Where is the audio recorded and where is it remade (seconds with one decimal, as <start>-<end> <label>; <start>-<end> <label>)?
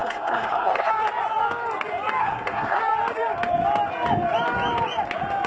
0.0-0.9 remade; 0.9-2.2 recorded; 2.2-2.8 remade; 2.8-5.5 recorded